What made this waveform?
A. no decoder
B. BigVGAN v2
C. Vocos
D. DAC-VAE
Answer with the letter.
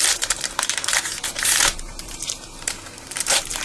B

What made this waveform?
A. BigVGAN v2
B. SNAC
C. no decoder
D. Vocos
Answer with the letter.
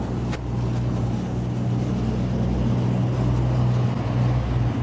C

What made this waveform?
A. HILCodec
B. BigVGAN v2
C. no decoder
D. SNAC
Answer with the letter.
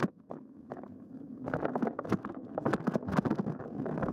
D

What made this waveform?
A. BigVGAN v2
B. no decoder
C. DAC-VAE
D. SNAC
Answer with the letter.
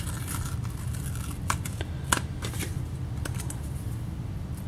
B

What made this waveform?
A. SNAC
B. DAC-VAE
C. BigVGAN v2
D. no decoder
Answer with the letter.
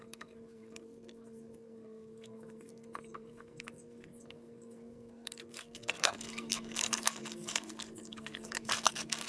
A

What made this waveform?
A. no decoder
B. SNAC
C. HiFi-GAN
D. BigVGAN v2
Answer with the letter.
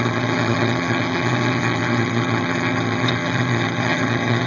C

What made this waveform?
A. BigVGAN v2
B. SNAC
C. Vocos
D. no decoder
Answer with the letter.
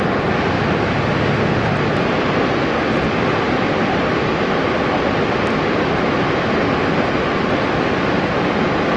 D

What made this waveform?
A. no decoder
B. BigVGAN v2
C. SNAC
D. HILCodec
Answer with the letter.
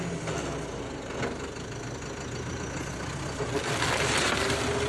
A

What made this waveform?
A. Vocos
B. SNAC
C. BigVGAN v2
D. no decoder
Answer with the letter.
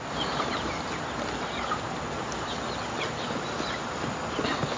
D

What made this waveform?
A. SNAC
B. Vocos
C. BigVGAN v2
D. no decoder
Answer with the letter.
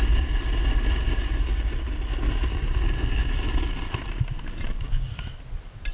D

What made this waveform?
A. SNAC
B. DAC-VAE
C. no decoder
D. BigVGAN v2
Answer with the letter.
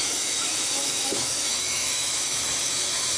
B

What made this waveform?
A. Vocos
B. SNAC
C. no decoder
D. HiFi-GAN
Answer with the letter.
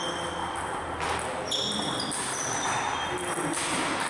C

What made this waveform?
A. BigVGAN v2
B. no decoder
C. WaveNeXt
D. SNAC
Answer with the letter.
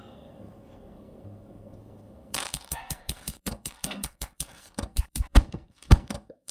D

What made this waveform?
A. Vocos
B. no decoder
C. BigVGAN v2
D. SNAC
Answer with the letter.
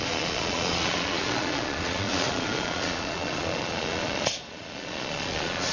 A